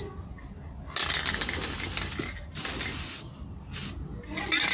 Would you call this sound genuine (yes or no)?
yes